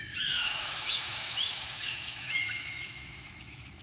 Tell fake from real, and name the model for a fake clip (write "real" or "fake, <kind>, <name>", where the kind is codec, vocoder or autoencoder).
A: fake, autoencoder, DAC-VAE